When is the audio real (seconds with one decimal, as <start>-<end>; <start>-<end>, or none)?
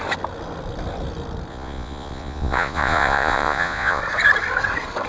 0.0-1.5; 4.0-5.1